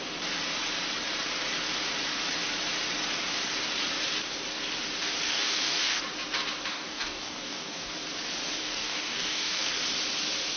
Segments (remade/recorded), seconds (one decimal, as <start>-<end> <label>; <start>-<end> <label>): 0.0-5.3 recorded; 5.3-6.0 remade; 6.0-6.7 recorded; 6.7-7.9 remade; 7.9-8.6 recorded; 8.6-9.7 remade; 9.7-10.6 recorded